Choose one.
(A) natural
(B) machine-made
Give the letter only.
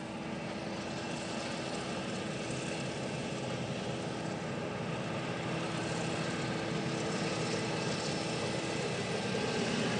A